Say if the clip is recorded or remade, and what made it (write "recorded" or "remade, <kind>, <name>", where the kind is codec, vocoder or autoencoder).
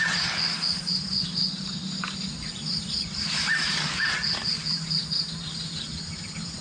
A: recorded